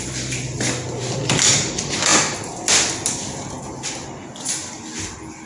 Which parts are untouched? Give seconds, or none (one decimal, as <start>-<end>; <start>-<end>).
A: 0.0-5.5